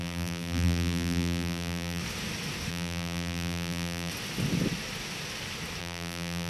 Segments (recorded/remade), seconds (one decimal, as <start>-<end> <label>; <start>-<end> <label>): 0.0-2.0 remade; 2.0-2.7 recorded; 2.7-4.1 remade; 4.1-5.8 recorded; 5.8-6.5 remade